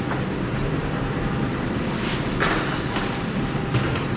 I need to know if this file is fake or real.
real